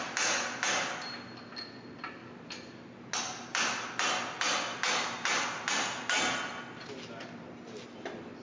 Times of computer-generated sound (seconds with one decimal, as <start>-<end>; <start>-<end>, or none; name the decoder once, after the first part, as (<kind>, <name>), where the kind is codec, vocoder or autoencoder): none